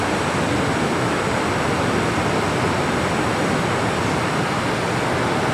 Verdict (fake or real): real